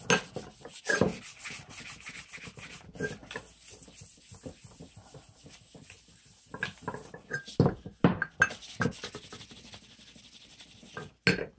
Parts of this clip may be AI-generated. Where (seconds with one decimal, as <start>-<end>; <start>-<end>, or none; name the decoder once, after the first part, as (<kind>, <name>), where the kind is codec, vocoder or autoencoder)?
none

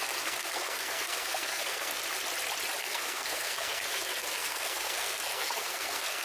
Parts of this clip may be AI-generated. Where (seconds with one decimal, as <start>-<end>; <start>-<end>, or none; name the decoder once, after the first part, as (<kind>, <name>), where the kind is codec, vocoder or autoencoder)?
0.0-2.0 (codec, SNAC); 2.8-6.2

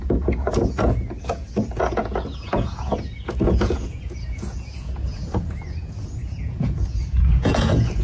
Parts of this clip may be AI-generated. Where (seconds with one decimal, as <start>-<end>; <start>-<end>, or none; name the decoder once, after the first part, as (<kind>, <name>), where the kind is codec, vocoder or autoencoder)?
0.0-8.0 (vocoder, Vocos)